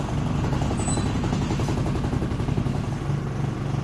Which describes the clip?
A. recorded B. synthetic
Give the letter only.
A